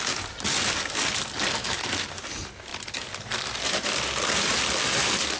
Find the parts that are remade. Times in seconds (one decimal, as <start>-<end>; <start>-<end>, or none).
1.6-2.1